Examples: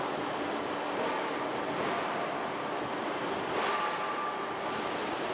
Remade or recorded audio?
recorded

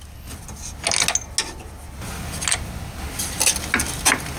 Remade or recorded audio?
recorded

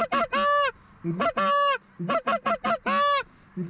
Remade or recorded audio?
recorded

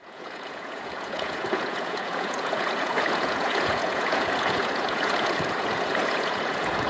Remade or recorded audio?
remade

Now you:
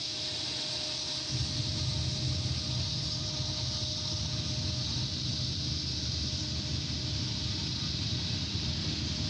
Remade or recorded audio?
recorded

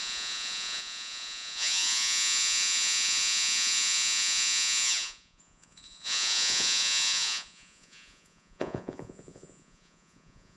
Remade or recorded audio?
remade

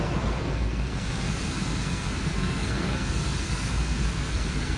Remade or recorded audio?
remade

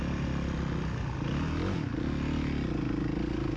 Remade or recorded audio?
recorded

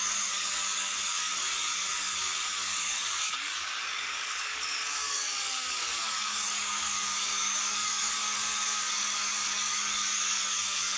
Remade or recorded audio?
remade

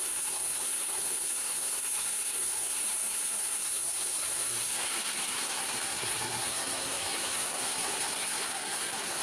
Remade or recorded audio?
remade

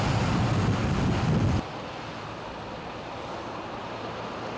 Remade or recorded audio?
recorded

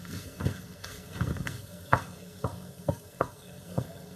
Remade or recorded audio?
remade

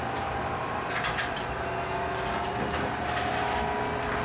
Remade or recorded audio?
recorded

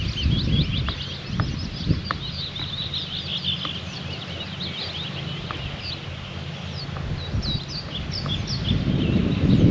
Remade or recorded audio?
recorded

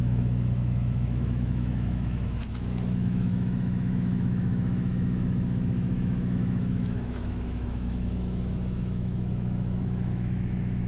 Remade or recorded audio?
remade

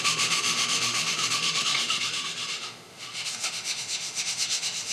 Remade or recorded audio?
remade